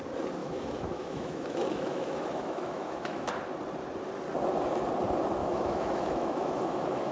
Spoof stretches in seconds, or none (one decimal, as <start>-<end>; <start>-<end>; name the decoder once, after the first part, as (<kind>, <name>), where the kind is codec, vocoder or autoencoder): 0.4-3.3 (autoencoder, DAC-VAE); 5.4-7.1